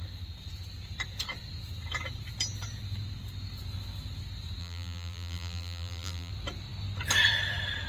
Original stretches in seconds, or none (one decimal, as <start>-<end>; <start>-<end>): 0.0-4.6; 6.3-7.9